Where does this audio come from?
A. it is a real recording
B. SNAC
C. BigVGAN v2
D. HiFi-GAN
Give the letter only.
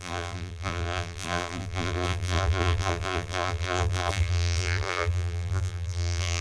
C